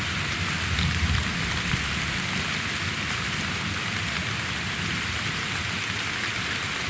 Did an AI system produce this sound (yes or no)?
no